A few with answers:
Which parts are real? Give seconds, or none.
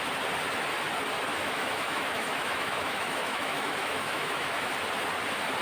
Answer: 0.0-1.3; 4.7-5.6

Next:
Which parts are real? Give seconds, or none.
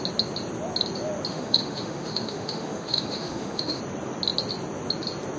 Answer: 0.0-1.3; 3.8-5.4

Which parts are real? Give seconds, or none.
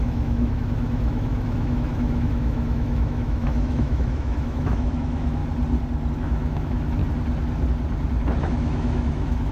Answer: 5.4-6.1; 7.0-8.4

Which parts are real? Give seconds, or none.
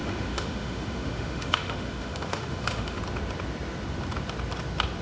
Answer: 3.0-5.0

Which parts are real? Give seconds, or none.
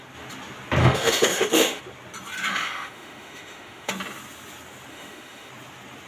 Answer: 0.0-0.8; 1.8-2.5; 3.9-4.9; 5.5-6.1